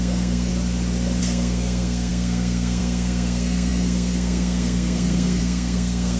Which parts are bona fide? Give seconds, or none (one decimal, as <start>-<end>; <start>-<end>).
0.5-1.2